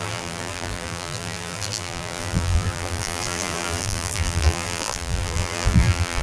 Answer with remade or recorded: remade